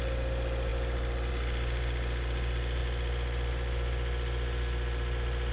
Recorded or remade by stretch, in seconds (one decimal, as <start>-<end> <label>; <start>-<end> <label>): 0.0-5.5 recorded